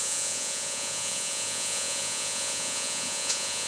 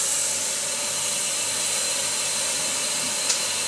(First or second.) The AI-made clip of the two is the first